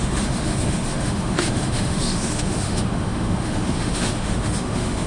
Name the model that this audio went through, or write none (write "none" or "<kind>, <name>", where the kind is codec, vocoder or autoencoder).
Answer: autoencoder, DAC-VAE